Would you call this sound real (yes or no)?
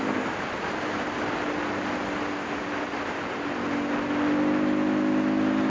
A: yes